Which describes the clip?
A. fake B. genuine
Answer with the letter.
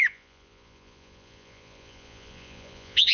A